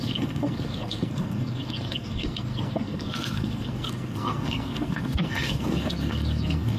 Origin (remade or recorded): remade